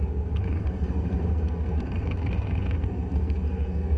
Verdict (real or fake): fake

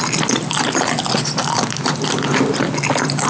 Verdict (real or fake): real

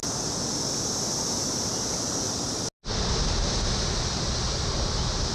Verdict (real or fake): real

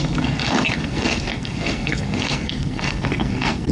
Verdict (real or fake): fake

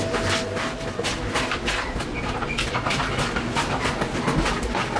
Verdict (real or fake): real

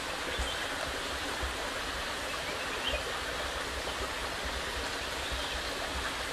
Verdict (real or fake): real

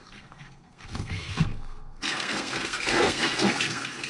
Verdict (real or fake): fake